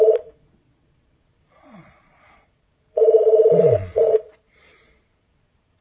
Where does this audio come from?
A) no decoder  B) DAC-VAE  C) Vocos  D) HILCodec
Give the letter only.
C